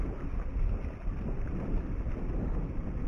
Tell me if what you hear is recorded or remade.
recorded